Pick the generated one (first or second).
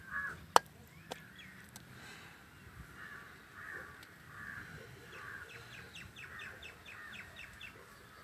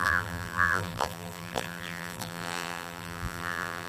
second